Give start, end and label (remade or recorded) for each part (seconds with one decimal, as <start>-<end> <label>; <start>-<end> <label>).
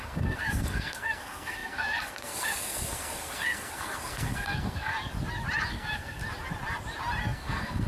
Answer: 0.0-4.9 remade; 4.9-5.7 recorded; 5.7-6.2 remade; 6.2-7.2 recorded; 7.2-7.9 remade